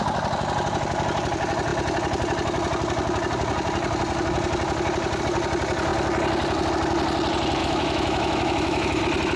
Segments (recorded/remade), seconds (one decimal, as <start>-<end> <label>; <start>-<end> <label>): 0.0-7.6 recorded; 7.6-9.0 remade; 9.0-9.4 recorded